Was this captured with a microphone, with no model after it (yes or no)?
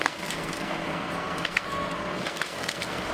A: no